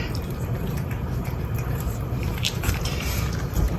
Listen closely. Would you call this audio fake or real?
fake